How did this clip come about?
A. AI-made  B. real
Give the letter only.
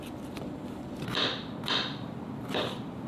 A